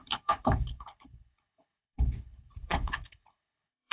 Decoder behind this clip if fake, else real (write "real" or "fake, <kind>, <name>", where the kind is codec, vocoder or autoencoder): fake, codec, HILCodec